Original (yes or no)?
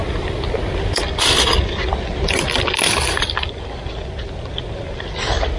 yes